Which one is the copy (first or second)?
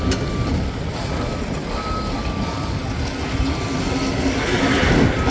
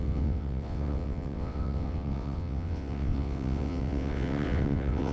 second